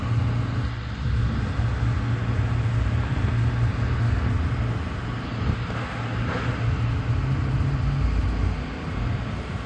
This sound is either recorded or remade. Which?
recorded